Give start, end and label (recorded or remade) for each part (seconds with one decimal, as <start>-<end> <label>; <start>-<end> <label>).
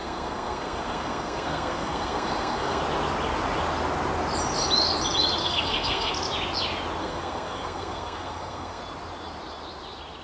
0.0-2.8 remade; 2.8-5.4 recorded; 5.4-6.1 remade; 6.1-7.0 recorded; 7.0-8.8 remade; 8.8-10.2 recorded